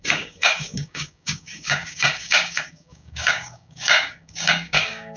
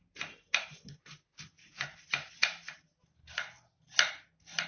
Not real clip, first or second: first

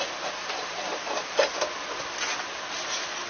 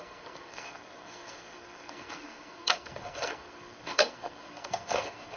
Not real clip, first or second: second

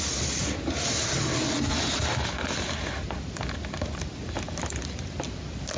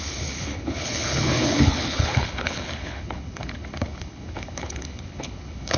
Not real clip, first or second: second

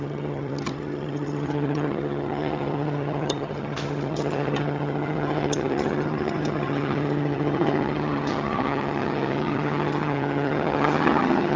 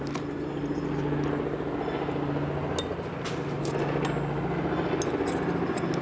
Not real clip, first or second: first